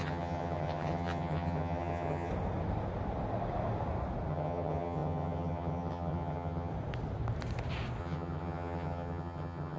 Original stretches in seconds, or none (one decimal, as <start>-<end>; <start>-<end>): 2.3-4.3; 6.7-8.0